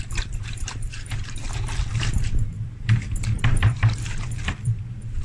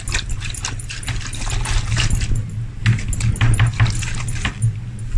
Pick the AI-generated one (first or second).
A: first